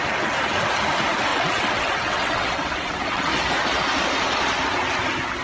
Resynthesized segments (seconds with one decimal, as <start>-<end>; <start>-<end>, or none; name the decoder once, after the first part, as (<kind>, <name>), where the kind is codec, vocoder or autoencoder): 1.3-3.3 (vocoder, WaveNeXt)